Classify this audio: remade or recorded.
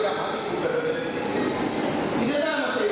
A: recorded